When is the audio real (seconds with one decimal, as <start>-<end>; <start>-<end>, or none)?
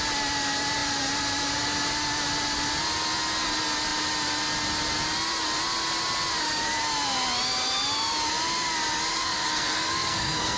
0.0-9.1